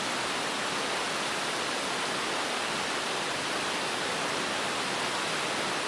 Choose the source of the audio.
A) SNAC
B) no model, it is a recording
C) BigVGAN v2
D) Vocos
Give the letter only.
B